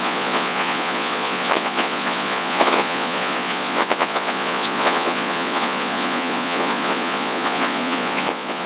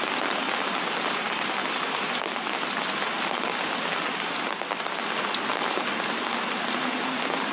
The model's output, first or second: first